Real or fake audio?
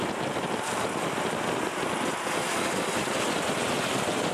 real